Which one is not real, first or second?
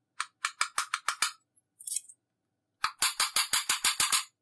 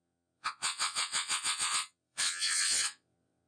second